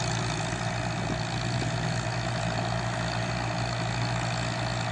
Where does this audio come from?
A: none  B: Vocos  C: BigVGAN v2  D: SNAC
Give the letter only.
A